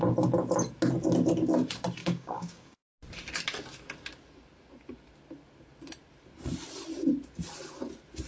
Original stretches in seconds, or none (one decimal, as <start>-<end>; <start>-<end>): 0.0-2.0; 2.9-8.3